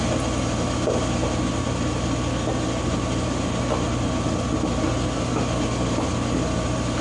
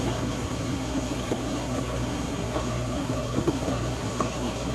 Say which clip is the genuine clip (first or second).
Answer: first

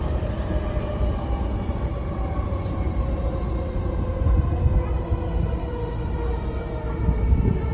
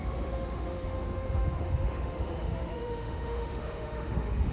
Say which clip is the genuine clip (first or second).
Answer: first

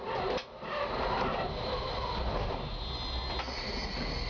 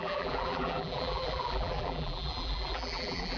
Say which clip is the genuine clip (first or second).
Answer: first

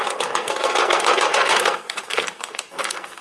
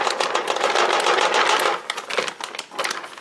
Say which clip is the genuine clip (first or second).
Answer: second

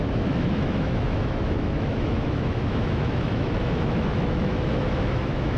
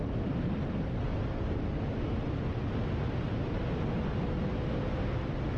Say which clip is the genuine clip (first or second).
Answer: second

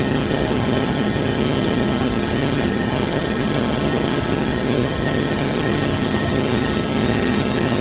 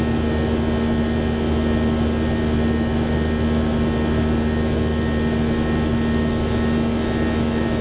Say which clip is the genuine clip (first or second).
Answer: second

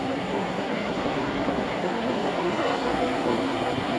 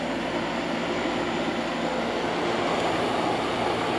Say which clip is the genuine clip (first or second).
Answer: second